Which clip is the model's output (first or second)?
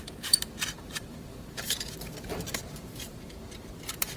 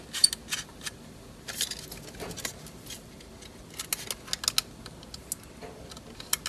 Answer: first